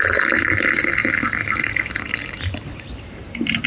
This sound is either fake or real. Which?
real